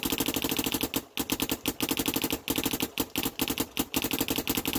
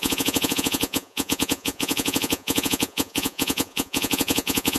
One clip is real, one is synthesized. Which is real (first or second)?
first